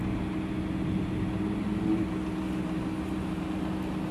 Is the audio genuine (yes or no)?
yes